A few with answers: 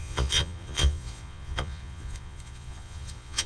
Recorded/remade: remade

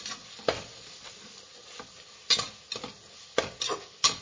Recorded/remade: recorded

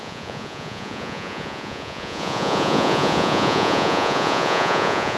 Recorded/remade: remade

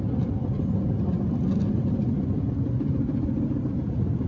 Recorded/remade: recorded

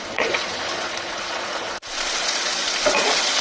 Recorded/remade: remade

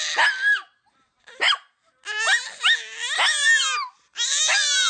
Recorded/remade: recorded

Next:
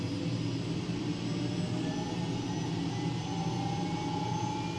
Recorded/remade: recorded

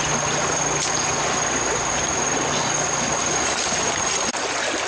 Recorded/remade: recorded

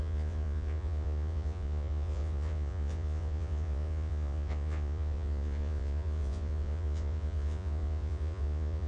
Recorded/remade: remade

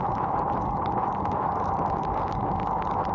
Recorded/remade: recorded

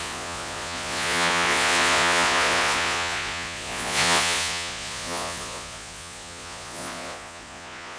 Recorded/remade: remade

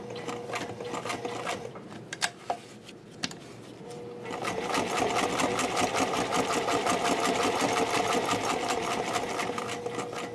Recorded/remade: recorded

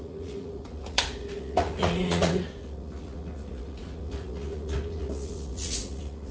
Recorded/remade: remade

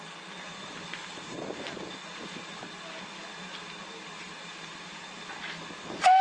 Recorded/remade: recorded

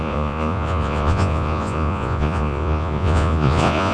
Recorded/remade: remade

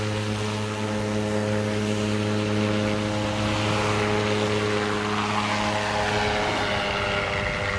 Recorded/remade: recorded